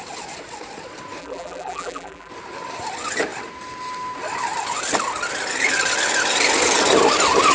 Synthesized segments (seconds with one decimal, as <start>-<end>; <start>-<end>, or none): 1.2-2.3